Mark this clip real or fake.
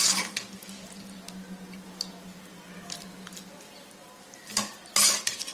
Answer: real